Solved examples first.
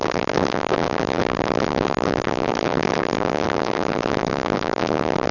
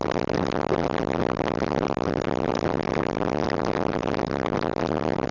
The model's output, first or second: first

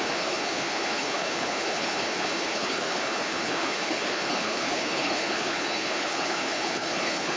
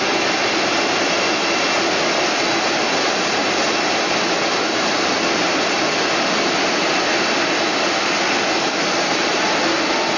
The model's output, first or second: first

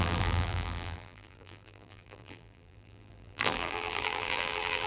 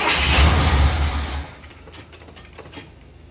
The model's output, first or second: first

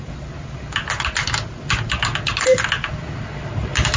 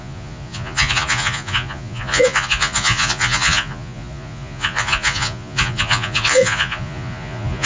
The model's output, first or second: second